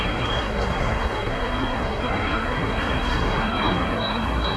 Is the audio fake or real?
fake